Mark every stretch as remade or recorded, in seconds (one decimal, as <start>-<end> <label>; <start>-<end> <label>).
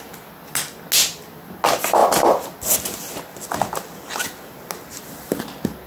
0.0-5.9 recorded